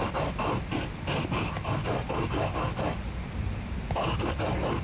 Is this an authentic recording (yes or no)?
yes